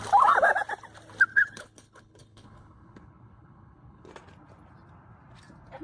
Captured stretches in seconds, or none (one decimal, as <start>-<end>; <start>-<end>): 0.0-1.3; 4.1-5.8